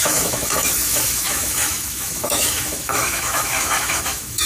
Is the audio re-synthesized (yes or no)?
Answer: yes